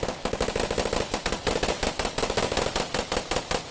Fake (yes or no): no